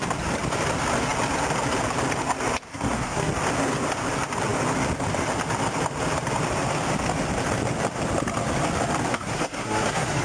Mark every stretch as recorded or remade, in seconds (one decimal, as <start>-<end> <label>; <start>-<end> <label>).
0.0-2.7 recorded; 2.7-3.3 remade; 3.3-9.1 recorded; 9.1-10.2 remade